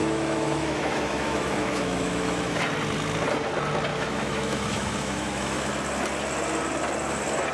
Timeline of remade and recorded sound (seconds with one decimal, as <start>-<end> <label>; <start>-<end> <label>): 0.0-2.6 remade; 2.6-3.9 recorded; 3.9-5.7 remade; 5.7-7.5 recorded